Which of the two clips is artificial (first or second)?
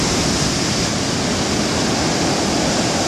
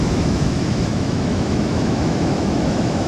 second